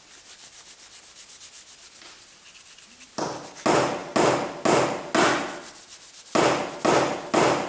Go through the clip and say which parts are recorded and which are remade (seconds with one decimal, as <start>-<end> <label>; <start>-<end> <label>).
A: 0.0-7.7 recorded